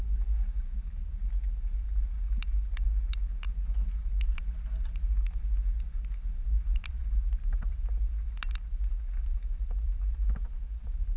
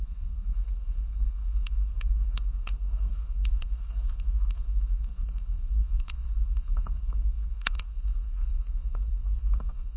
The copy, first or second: second